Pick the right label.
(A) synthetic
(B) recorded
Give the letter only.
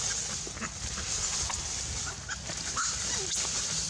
B